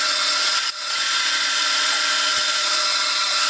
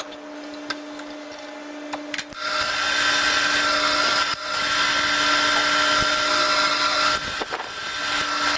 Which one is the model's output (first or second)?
first